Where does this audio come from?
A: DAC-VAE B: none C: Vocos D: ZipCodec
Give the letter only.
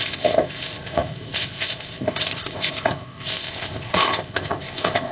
D